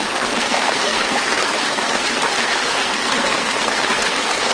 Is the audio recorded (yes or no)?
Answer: no